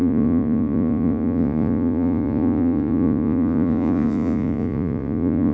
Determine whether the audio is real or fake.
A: fake